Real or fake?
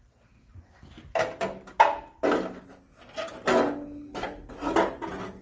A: real